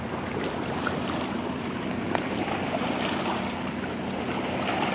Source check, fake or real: real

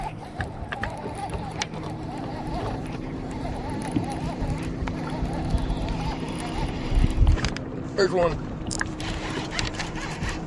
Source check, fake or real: fake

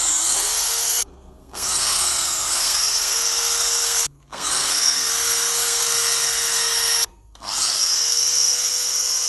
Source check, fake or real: fake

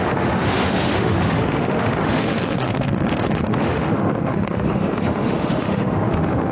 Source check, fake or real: fake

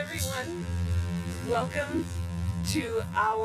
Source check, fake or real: fake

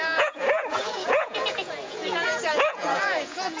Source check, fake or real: fake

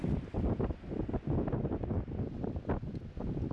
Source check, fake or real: real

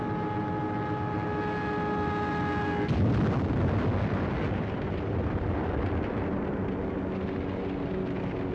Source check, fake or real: real